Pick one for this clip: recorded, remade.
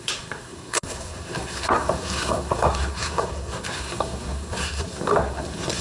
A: remade